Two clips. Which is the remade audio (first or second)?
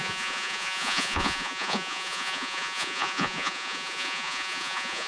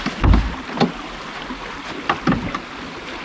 first